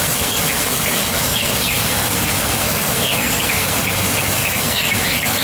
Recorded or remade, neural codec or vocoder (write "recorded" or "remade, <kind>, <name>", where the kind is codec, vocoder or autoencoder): remade, codec, SNAC